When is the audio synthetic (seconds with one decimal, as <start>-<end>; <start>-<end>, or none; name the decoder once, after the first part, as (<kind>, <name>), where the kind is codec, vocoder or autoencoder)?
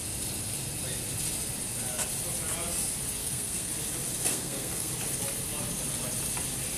3.2-3.7 (codec, SNAC); 4.3-4.9